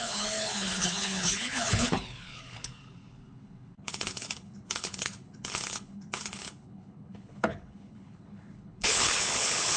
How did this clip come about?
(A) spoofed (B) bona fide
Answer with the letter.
A